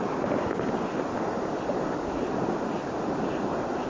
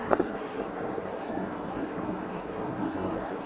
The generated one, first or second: second